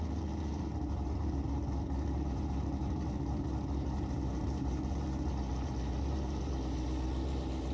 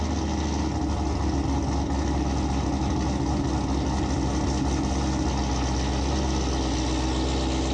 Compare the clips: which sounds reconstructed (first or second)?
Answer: first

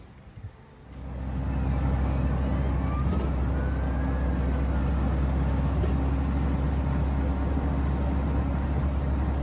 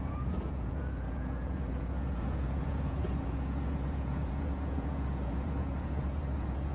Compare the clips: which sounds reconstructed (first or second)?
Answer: second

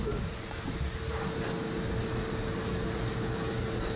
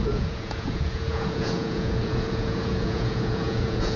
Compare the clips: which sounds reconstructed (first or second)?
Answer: second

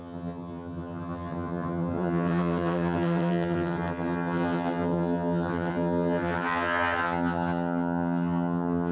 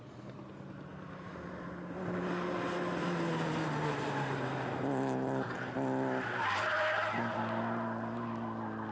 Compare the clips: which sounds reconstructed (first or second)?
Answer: first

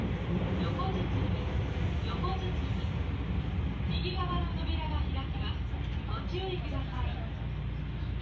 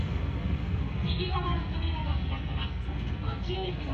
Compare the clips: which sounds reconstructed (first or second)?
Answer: second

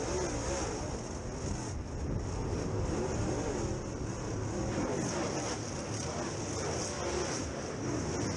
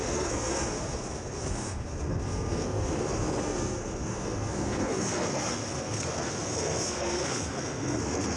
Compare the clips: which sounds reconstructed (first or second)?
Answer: second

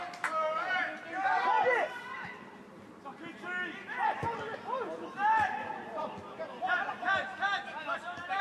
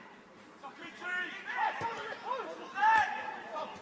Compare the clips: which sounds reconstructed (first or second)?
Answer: second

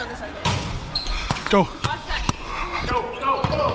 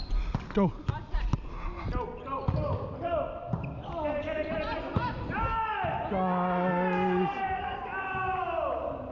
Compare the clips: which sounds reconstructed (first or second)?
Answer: first